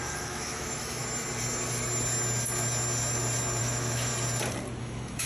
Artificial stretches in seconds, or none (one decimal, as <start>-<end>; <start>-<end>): 0.0-1.0; 3.6-4.1; 4.8-5.3

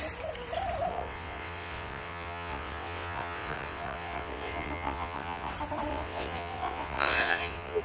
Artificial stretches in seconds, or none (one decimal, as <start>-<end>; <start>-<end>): 0.9-5.5; 5.9-7.8

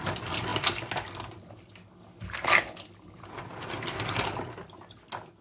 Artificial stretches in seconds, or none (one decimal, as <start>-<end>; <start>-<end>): none